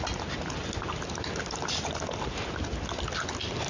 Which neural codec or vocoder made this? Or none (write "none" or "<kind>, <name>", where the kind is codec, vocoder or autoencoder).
none